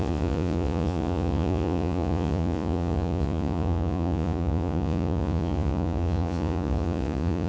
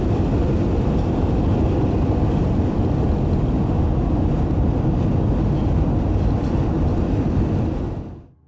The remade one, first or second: first